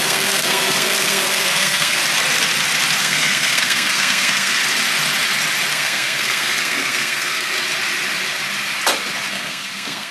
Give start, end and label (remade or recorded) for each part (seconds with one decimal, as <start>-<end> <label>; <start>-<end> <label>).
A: 0.0-2.0 remade; 2.0-3.0 recorded; 3.0-4.6 remade; 4.6-5.7 recorded; 5.7-7.5 remade; 7.5-9.3 recorded; 9.3-10.1 remade